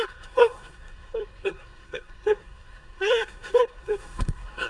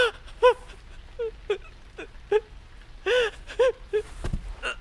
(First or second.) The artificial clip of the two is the first